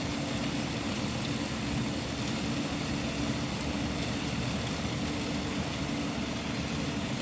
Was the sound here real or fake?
real